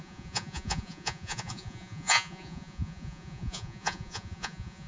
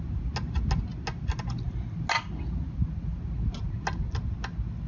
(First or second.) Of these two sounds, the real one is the second